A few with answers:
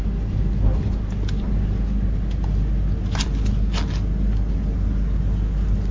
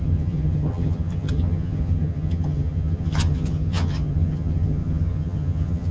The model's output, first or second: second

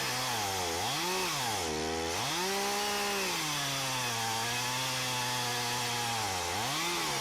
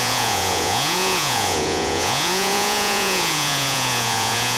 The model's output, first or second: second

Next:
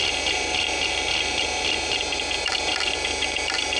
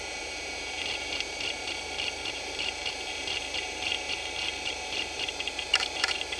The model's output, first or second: second